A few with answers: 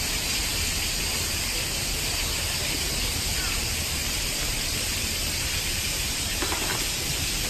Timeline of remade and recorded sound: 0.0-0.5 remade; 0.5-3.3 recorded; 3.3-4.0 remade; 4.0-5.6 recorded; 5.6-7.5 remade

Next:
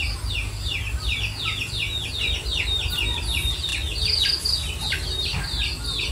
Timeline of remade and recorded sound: 0.0-6.1 recorded

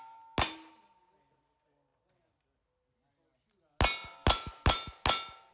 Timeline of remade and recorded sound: 0.0-5.5 recorded

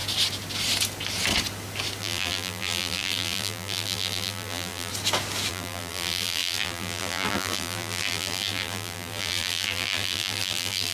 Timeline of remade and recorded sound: 0.0-2.0 recorded; 2.0-4.9 remade; 4.9-5.5 recorded; 5.5-10.9 remade

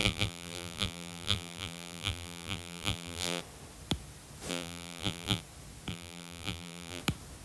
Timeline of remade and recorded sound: 0.0-3.4 remade; 3.4-4.5 recorded; 4.5-5.4 remade; 5.4-5.9 recorded; 5.9-7.0 remade; 7.0-7.4 recorded